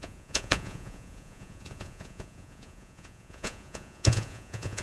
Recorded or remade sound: remade